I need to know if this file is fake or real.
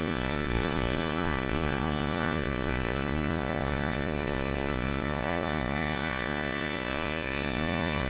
fake